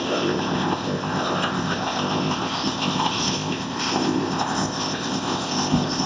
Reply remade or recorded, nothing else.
remade